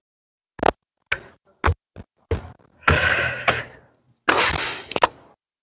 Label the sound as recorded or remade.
recorded